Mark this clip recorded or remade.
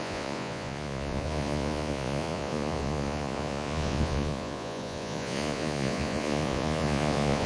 remade